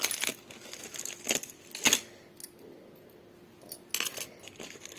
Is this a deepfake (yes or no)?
no